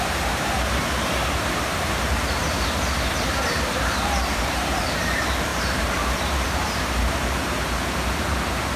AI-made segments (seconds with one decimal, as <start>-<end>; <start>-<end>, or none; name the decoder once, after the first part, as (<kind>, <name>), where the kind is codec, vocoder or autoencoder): 0.0-8.8 (vocoder, BigVGAN v2)